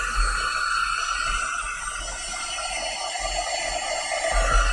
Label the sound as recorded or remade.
recorded